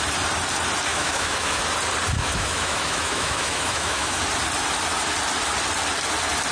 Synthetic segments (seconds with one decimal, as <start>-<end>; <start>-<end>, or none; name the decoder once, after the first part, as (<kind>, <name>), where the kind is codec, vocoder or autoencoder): 0.9-1.6 (autoencoder, DAC-VAE); 2.2-4.2